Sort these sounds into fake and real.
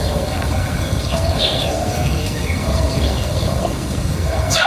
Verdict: fake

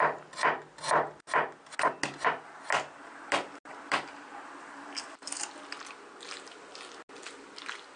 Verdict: real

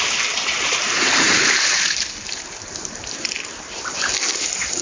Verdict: fake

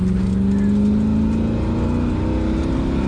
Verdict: real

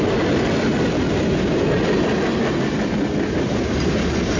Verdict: real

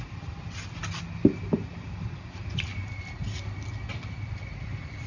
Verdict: real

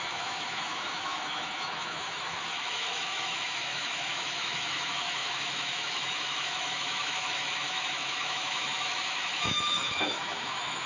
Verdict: fake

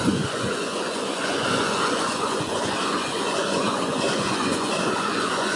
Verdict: fake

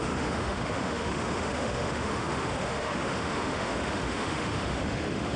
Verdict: fake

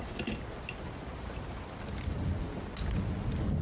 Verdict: real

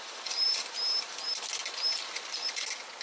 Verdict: real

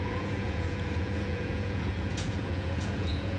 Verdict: fake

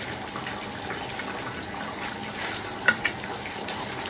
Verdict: real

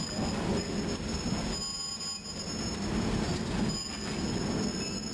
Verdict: real